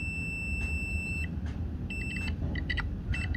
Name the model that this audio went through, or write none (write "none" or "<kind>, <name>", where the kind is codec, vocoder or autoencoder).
none